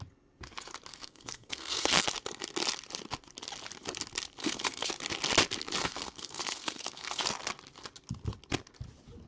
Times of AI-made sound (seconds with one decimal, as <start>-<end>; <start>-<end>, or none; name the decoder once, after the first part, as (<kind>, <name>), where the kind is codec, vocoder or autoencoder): 0.9-2.0 (codec, SNAC); 4.4-4.9; 5.8-7.2